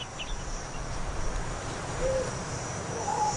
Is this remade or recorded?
remade